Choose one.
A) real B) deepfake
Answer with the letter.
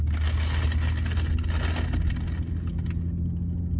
A